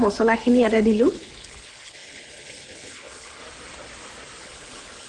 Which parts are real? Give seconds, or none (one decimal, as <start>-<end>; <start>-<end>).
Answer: 3.4-4.4